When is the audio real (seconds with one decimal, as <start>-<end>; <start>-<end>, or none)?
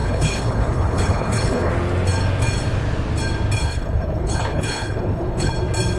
1.7-3.6; 5.5-6.0